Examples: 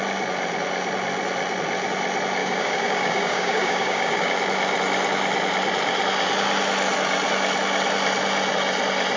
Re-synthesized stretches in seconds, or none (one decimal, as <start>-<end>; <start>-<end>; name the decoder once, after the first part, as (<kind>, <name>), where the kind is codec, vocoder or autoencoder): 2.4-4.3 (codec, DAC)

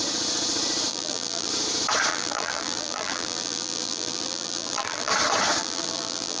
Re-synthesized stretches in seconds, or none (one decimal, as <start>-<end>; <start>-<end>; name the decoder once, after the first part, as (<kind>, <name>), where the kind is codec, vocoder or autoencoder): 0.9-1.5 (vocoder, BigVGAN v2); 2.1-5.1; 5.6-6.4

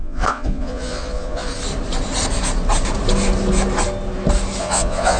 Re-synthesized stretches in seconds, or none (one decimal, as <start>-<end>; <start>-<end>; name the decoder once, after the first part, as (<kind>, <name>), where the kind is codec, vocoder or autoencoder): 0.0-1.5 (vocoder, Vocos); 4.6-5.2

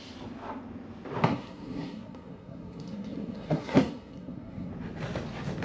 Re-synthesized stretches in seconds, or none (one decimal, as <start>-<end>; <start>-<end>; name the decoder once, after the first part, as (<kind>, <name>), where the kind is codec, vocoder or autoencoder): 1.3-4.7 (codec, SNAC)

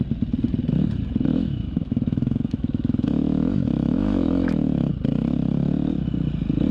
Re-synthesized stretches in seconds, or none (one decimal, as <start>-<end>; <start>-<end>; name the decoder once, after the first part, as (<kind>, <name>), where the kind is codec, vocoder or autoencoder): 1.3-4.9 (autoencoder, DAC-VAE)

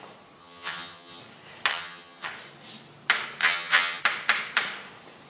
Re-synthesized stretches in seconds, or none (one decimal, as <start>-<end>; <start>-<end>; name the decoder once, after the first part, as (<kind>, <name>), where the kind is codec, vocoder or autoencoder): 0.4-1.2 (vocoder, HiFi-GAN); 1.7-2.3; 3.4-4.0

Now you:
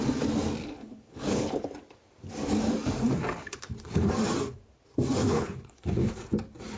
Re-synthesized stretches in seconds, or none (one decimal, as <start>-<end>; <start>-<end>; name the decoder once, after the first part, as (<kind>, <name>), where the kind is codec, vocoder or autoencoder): 0.6-1.7 (codec, HILCodec); 3.4-4.1; 5.2-6.1